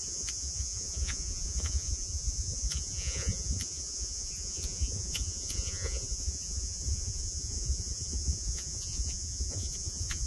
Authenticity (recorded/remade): remade